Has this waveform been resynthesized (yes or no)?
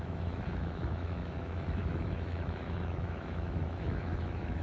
yes